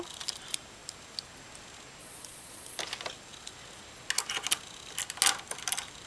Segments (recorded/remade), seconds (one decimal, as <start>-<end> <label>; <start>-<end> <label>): 0.0-2.0 recorded; 2.0-2.8 remade; 2.8-6.1 recorded